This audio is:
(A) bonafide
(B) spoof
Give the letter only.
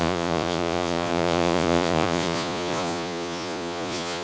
B